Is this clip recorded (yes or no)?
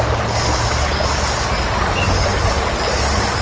yes